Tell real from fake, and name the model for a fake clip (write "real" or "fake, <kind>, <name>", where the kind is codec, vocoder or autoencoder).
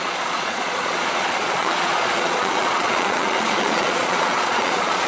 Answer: fake, vocoder, Vocos